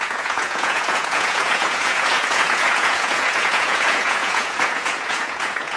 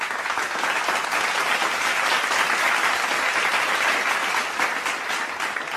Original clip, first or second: second